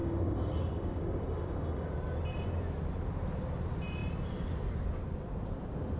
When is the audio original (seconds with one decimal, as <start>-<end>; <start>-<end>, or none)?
1.9-6.0